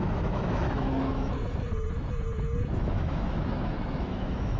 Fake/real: fake